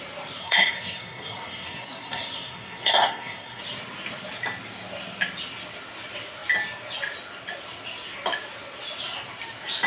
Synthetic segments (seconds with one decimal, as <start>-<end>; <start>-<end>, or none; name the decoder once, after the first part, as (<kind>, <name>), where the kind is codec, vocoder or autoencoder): 0.4-3.6 (codec, SNAC)